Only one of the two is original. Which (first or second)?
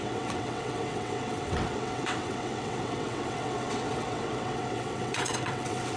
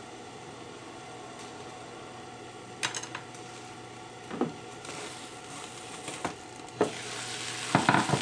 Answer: second